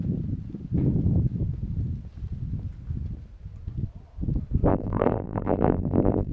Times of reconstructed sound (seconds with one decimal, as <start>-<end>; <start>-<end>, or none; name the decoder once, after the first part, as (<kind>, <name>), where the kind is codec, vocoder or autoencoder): 4.7-6.3 (vocoder, BigVGAN v2)